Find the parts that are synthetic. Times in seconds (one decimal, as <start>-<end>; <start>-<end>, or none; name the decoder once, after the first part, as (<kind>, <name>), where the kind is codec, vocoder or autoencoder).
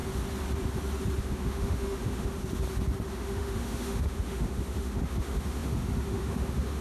1.2-2.4 (autoencoder, DAC-VAE); 3.1-6.8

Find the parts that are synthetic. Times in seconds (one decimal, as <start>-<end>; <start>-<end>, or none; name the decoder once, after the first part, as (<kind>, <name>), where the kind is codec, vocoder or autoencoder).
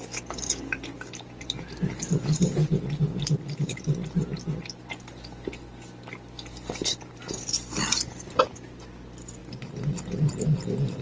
none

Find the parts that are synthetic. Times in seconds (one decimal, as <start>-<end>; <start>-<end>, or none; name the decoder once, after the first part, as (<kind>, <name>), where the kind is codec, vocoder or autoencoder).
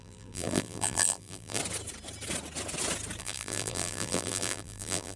0.0-1.6 (vocoder, BigVGAN v2); 3.2-5.2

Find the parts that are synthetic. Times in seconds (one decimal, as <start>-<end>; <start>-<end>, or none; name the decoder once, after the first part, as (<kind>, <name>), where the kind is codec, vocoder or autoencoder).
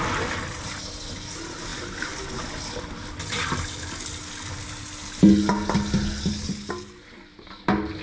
none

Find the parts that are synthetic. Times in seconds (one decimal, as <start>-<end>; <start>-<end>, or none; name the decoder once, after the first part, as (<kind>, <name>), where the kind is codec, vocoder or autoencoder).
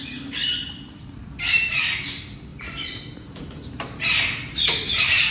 2.5-3.4 (vocoder, BigVGAN v2)